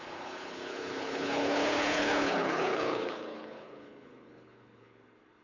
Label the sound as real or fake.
fake